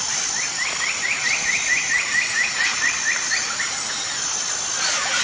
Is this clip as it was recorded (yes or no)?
yes